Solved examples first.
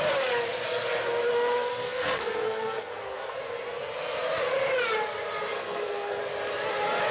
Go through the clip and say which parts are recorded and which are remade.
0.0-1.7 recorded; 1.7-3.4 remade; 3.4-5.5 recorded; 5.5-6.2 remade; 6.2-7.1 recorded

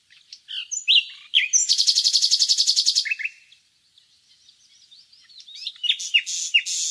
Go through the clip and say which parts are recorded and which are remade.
0.0-6.9 recorded

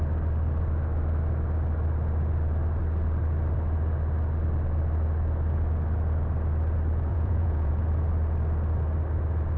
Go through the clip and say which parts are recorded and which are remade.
0.0-7.1 recorded; 7.1-7.7 remade; 7.7-9.6 recorded

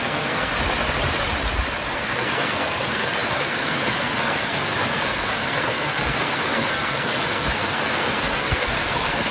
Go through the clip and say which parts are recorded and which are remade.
0.0-0.5 remade; 0.5-1.9 recorded; 1.9-9.3 remade

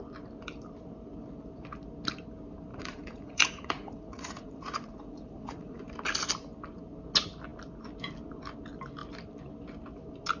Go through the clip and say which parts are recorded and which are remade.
0.0-2.7 recorded; 2.7-5.8 remade; 5.8-10.4 recorded

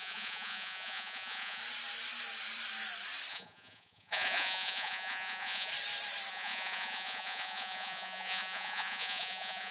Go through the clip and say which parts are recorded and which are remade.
0.0-1.6 remade; 1.6-3.3 recorded; 3.3-5.7 remade; 5.7-6.3 recorded; 6.3-9.7 remade

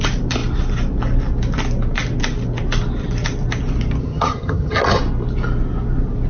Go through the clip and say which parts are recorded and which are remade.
0.0-4.0 recorded; 4.0-5.0 remade; 5.0-6.3 recorded